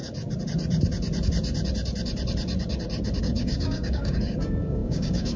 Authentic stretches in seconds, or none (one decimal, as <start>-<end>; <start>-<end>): 0.0-3.2